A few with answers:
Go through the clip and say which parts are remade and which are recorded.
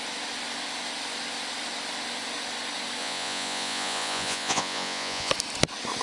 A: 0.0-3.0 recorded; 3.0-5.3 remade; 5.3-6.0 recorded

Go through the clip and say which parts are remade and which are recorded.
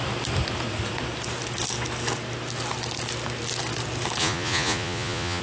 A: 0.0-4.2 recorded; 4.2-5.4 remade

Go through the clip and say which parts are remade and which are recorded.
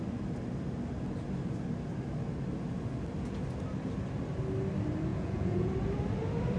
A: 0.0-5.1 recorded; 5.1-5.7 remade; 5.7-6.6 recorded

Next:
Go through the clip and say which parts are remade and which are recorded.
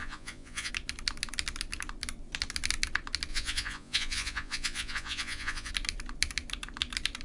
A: 0.0-0.7 remade; 0.7-3.3 recorded; 3.3-5.7 remade; 5.7-7.2 recorded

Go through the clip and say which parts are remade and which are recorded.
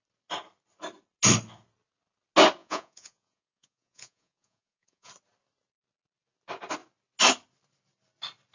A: 0.0-2.6 recorded; 2.6-5.1 remade; 5.1-8.5 recorded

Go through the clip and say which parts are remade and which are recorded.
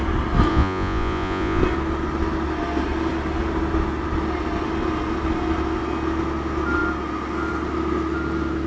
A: 0.0-0.5 recorded; 0.5-1.6 remade; 1.6-8.7 recorded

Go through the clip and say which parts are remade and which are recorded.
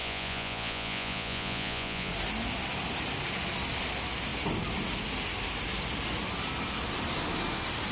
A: 0.0-2.1 remade; 2.1-7.9 recorded